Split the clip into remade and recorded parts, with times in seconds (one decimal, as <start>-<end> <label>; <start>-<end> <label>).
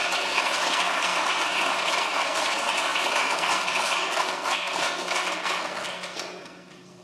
0.0-7.0 remade